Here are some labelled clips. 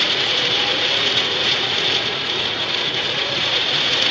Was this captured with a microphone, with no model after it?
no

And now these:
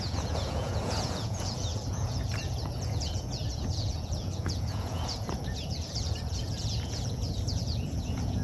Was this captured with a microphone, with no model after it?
no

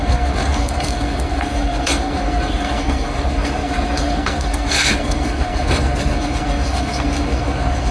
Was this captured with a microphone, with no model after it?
no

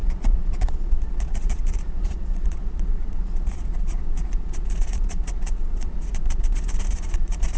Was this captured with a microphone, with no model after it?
no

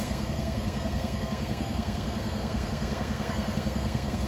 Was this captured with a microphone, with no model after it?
no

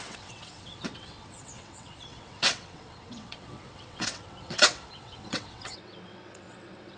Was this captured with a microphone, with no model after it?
no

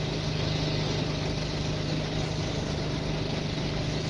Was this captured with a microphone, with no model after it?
yes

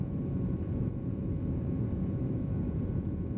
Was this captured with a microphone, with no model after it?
no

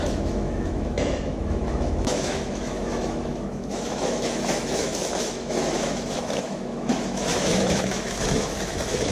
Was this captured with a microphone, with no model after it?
no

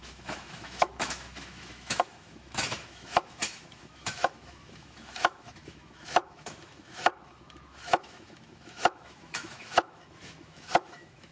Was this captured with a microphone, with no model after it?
no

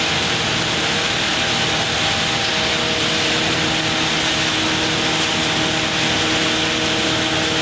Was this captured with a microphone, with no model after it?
yes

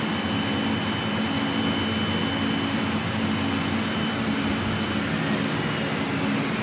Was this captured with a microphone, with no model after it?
yes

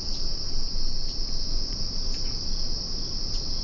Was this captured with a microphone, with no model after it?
yes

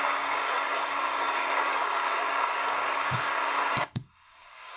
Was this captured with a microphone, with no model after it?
no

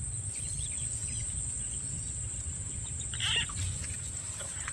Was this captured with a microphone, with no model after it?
yes